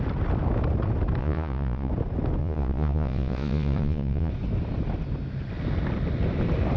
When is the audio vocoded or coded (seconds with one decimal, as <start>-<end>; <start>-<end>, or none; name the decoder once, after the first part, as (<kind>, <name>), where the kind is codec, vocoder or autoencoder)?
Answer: 1.2-1.9 (vocoder, Vocos); 2.4-4.3